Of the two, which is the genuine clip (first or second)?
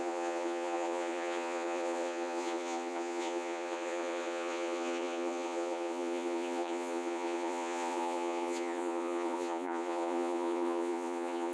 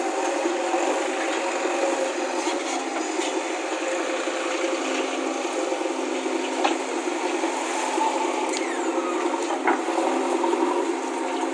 second